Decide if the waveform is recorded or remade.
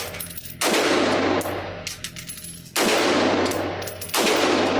recorded